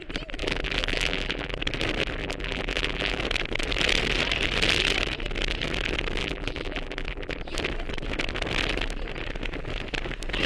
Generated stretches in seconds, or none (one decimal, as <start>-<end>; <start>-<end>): 0.4-1.6; 2.2-3.2; 6.2-7.4